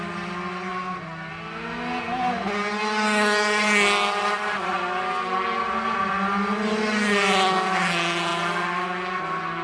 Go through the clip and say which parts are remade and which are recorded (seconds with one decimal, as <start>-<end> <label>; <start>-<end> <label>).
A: 0.0-9.6 recorded